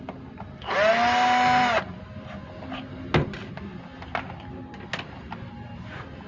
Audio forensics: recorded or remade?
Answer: recorded